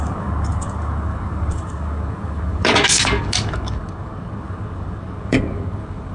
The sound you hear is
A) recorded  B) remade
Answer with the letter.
B